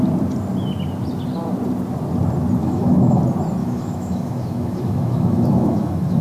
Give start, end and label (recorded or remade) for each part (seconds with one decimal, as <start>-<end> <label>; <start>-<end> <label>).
0.0-2.6 recorded; 2.6-3.2 remade; 3.2-3.6 recorded; 3.6-6.2 remade